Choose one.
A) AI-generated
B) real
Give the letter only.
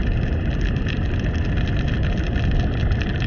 B